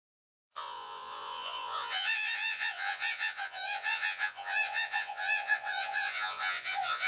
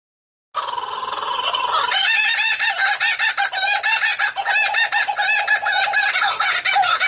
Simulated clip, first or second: first